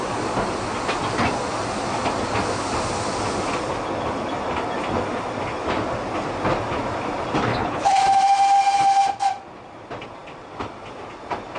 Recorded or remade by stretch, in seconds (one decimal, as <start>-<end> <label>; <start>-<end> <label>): 0.0-7.5 recorded; 7.5-8.0 remade; 8.0-11.6 recorded